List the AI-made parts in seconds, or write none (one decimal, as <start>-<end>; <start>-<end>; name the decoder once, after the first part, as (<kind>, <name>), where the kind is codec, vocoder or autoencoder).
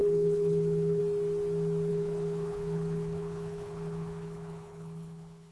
0.0-1.0 (codec, HILCodec); 1.9-5.5